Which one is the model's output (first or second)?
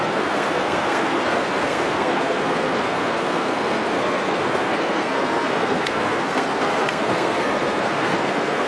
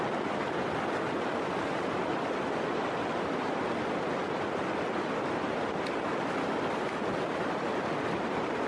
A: first